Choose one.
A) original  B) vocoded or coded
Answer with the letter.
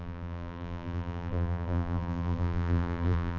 B